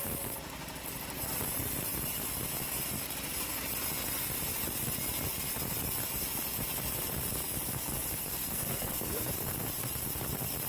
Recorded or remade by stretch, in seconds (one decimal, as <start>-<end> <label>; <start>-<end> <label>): 0.0-8.2 recorded; 8.2-9.3 remade; 9.3-10.7 recorded